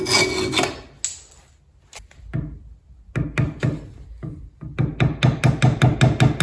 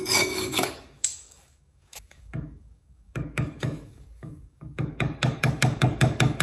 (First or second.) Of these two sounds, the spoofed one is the second